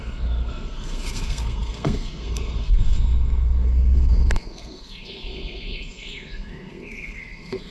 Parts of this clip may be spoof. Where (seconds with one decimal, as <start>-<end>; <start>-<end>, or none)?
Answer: 0.0-7.7